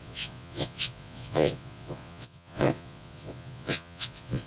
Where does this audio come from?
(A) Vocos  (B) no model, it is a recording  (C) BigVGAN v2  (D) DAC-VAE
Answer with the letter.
A